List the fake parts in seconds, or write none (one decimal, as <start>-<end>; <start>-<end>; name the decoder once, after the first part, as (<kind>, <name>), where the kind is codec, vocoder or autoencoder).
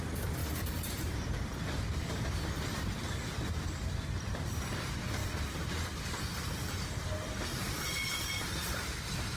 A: 0.4-1.8 (vocoder, BigVGAN v2)